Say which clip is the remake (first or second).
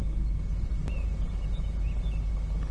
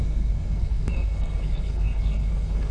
second